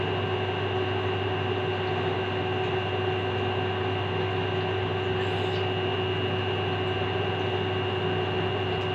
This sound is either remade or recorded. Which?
recorded